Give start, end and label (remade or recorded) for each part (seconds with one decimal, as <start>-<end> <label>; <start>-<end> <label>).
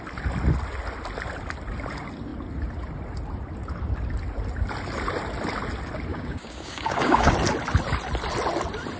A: 0.0-6.1 recorded; 6.1-7.3 remade; 7.3-9.0 recorded